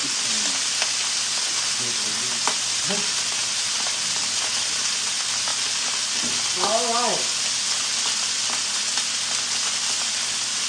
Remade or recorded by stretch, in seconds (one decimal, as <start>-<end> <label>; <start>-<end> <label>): 0.0-10.7 recorded